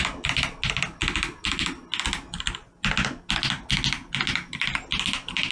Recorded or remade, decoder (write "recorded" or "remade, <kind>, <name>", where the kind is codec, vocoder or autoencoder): recorded